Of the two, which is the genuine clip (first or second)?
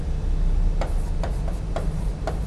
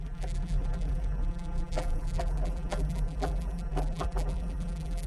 first